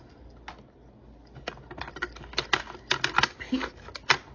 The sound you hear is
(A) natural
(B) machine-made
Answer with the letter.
A